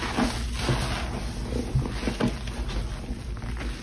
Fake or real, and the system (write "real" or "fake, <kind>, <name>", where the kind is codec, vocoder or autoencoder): real